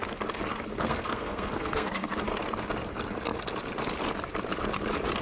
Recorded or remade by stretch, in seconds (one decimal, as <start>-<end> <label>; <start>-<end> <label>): 0.0-0.7 recorded; 0.7-2.2 remade; 2.2-5.2 recorded